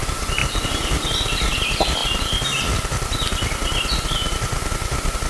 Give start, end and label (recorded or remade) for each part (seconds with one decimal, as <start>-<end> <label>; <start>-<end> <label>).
0.0-5.3 recorded